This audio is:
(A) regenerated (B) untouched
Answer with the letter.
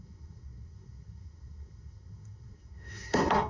A